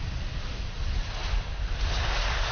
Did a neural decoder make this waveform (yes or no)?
no